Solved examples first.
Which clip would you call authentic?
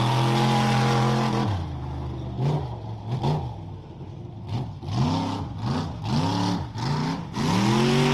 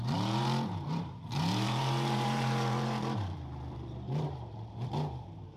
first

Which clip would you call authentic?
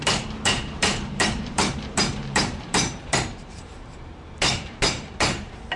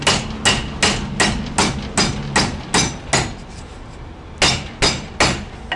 second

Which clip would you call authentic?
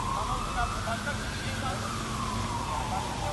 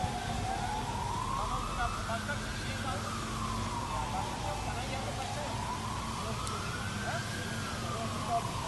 second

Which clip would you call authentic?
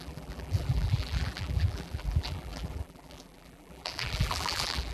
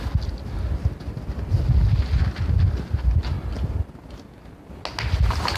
second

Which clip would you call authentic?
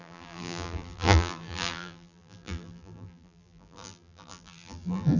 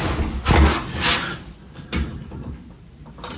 second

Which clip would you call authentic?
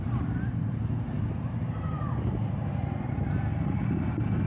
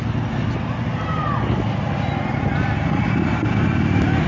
second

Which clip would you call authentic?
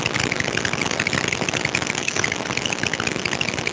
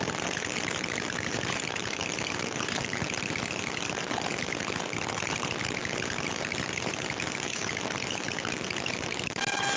first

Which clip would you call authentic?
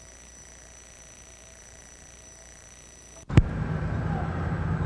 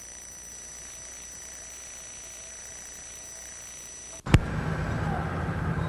second